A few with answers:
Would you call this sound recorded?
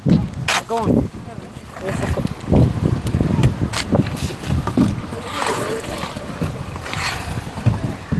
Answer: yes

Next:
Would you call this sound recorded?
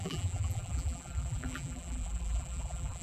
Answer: no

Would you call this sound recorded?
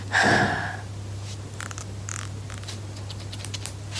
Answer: yes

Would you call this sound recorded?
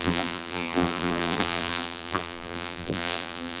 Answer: no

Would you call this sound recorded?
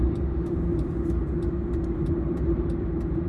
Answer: no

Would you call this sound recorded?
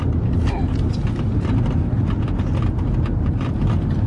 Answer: yes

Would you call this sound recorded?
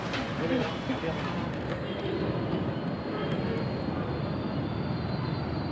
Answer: yes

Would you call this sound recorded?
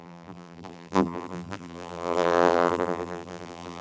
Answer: no